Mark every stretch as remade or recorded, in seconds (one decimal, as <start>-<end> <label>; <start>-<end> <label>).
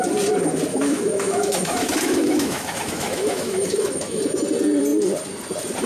0.0-0.7 recorded; 0.7-4.2 remade; 4.2-5.9 recorded